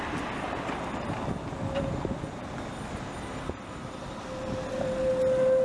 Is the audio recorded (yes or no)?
yes